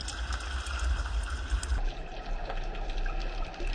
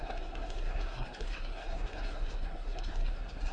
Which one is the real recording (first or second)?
first